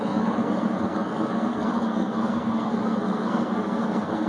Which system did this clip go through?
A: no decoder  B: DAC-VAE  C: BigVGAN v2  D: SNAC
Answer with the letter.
D